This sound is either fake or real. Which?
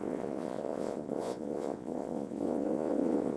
fake